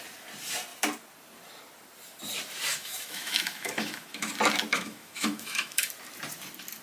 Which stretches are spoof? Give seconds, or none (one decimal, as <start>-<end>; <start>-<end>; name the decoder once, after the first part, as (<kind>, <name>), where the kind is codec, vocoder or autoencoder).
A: 2.7-4.3 (autoencoder, DAC-VAE); 4.7-5.9